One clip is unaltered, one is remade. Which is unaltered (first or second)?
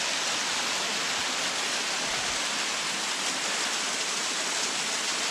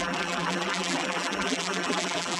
first